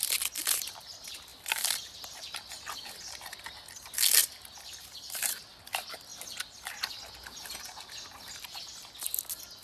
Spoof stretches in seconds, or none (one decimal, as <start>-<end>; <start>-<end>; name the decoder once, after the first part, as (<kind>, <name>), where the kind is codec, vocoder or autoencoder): 4.2-5.4 (vocoder, BigVGAN v2)